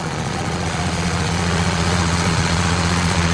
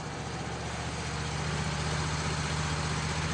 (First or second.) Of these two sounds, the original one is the second